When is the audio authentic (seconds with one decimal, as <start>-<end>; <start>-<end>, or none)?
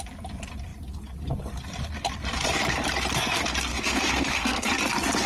0.0-3.7; 4.7-5.3